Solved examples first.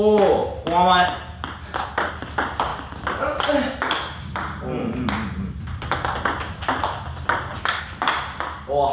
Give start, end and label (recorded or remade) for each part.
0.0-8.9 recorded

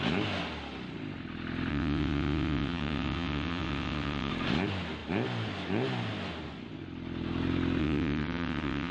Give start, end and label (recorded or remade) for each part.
0.0-1.7 recorded; 1.7-4.3 remade; 4.3-7.8 recorded; 7.8-8.9 remade

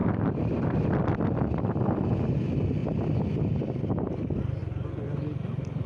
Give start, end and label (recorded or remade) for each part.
0.0-2.8 remade; 2.8-3.4 recorded; 3.4-4.6 remade; 4.6-5.9 recorded

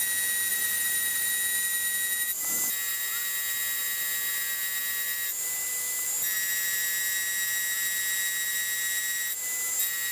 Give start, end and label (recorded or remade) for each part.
0.0-0.5 recorded; 0.5-1.3 remade; 1.3-10.1 recorded

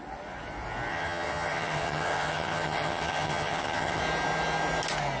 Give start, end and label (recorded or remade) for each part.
0.0-0.9 recorded; 0.9-4.0 remade; 4.0-5.2 recorded